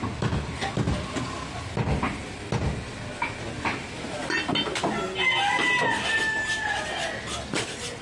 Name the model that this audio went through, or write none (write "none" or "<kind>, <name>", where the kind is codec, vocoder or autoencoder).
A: none